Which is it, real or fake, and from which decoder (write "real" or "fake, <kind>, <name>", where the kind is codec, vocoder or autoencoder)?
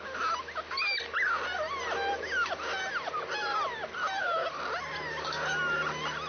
real